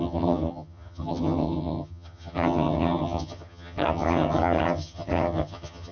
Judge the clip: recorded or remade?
remade